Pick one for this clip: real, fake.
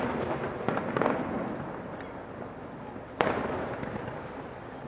real